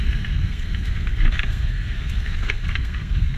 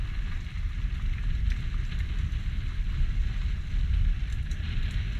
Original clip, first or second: second